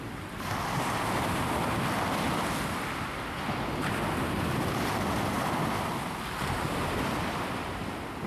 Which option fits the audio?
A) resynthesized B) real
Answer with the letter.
B